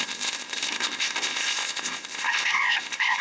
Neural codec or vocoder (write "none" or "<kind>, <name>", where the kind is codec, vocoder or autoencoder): codec, ZipCodec